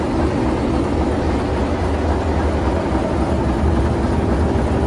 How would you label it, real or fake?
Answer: real